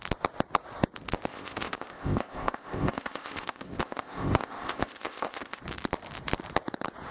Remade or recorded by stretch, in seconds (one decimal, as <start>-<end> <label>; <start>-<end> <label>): 0.0-1.3 recorded; 1.3-5.6 remade; 5.6-7.1 recorded

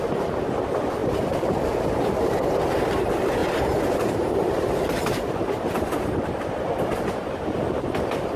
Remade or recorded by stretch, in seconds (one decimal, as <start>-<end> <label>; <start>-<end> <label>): 0.0-1.0 recorded; 1.0-2.7 remade; 2.7-3.4 recorded; 3.4-6.7 remade; 6.7-8.4 recorded

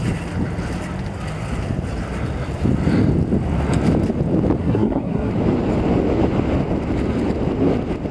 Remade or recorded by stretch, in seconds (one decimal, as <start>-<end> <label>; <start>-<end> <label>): 0.0-4.6 recorded; 4.6-5.3 remade; 5.3-8.1 recorded

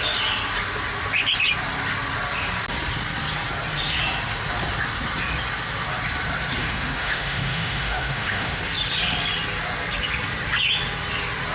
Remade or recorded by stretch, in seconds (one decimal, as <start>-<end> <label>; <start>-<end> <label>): 0.0-6.6 recorded; 6.6-8.6 remade; 8.6-11.5 recorded

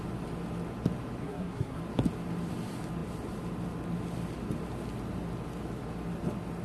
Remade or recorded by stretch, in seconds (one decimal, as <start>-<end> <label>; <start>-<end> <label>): 0.0-1.2 recorded; 1.2-1.8 remade; 1.8-6.6 recorded

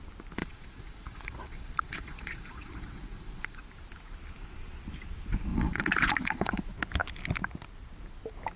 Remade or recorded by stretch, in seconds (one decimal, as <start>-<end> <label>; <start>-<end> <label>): 0.0-0.4 recorded; 0.4-3.6 remade; 3.6-5.5 recorded; 5.5-6.6 remade; 6.6-8.6 recorded